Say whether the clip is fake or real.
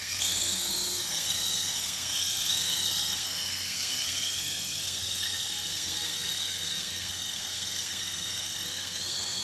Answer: fake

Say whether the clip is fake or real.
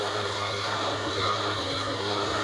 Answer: fake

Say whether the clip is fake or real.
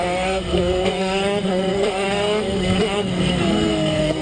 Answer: fake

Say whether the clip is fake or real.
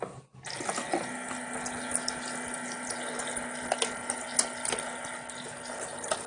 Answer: real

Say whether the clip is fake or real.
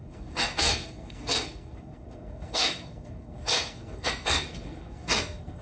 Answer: fake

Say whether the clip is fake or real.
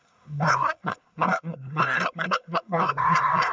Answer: fake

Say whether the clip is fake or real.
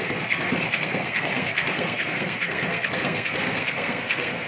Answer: fake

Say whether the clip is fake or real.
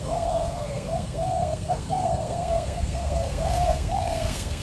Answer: fake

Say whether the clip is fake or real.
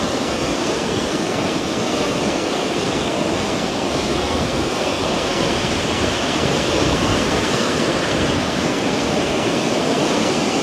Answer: fake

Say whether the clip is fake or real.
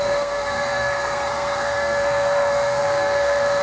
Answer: fake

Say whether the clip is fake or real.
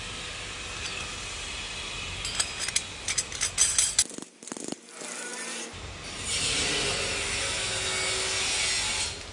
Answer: real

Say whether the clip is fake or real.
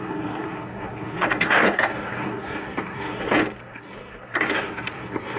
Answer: fake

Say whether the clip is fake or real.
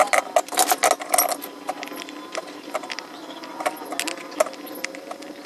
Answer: real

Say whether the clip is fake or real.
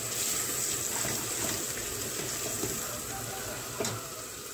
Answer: real